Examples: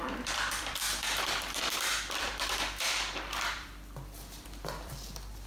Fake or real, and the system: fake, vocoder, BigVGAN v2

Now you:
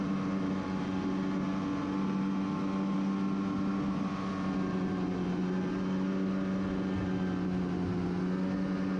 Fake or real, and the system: real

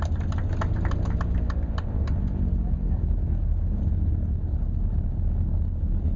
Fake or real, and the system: real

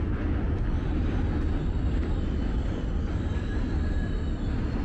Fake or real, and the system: real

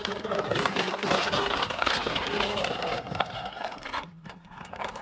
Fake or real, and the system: fake, codec, SNAC